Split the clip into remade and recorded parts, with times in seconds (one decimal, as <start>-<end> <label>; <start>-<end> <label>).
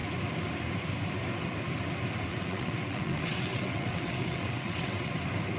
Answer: 0.0-2.3 recorded; 2.3-5.1 remade; 5.1-5.6 recorded